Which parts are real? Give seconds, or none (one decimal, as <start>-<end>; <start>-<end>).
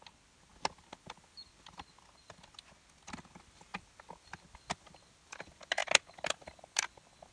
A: 0.0-5.8